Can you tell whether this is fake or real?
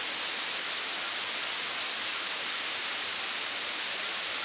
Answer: real